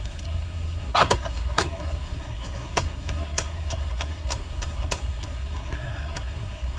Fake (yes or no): yes